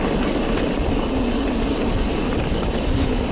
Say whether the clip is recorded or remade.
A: recorded